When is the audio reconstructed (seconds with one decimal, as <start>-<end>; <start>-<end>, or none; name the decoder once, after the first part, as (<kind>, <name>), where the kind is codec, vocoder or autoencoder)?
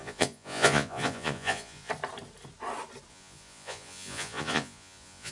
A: 0.0-1.9 (vocoder, Vocos); 3.1-5.3